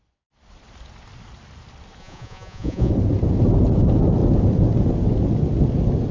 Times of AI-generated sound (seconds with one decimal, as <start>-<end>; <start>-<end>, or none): 2.0-2.9

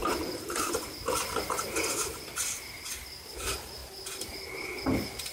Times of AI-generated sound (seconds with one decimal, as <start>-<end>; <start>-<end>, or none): none